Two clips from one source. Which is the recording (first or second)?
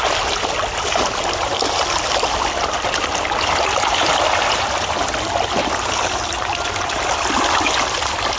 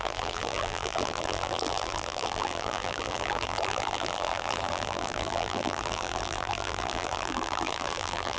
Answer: first